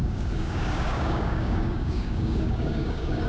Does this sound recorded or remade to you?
remade